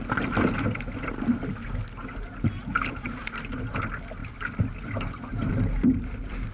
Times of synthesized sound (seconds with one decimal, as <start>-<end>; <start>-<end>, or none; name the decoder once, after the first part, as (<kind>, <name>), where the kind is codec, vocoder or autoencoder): none